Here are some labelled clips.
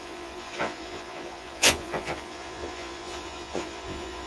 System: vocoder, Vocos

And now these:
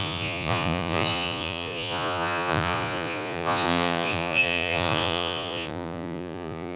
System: vocoder, Vocos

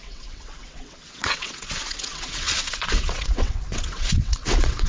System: vocoder, WaveNeXt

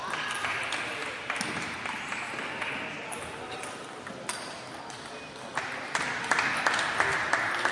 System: none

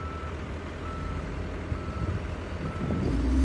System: none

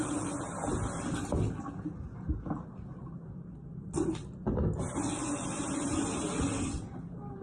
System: none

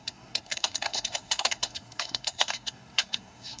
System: codec, SNAC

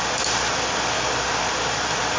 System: none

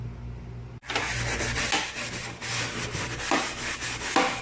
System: none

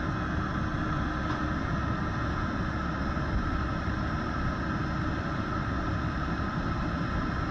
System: none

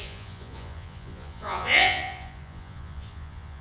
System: vocoder, Vocos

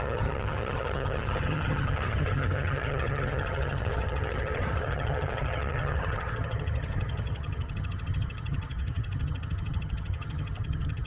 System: vocoder, HiFi-GAN